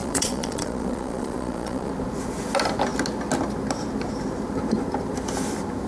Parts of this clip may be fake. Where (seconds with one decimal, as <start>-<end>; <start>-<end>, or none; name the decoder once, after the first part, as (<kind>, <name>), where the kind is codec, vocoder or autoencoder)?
0.0-1.9 (vocoder, Vocos)